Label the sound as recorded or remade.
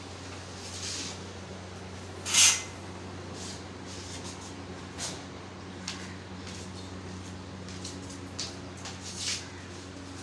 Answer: recorded